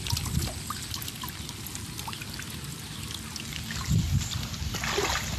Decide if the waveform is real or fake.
real